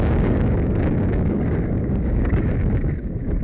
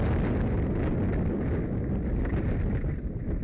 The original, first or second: second